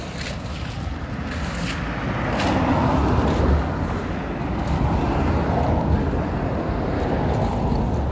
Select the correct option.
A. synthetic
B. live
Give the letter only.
B